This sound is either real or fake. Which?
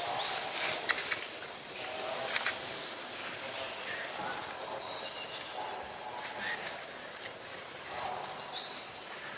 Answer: real